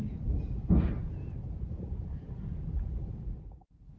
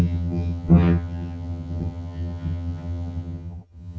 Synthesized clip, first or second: second